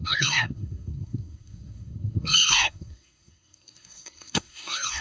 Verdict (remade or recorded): remade